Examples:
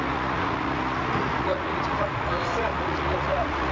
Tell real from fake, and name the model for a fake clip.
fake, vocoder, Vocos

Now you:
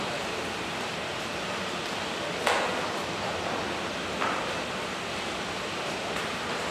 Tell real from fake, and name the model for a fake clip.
real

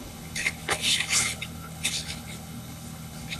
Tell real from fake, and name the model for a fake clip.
fake, codec, HILCodec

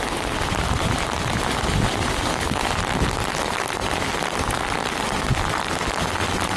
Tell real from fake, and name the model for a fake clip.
real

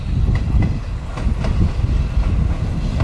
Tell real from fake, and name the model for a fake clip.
real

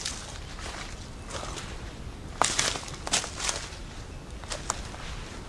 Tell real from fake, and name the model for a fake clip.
real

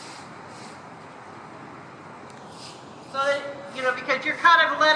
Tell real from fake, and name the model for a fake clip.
real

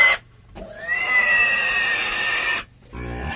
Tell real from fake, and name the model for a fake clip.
real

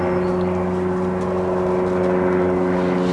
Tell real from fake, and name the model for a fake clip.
real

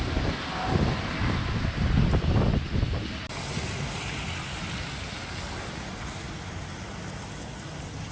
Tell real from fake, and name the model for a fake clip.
real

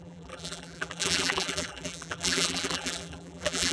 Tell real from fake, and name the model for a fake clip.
fake, vocoder, BigVGAN v2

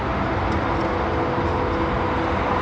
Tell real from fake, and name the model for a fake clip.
real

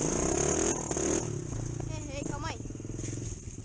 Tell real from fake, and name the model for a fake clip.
real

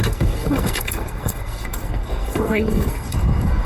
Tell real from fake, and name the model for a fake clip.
fake, codec, SNAC